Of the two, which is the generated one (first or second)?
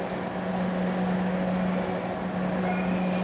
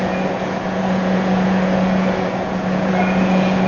second